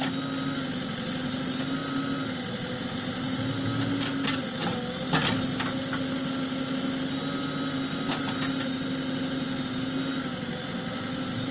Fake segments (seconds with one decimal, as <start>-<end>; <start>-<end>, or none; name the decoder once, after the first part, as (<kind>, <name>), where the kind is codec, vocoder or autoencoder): none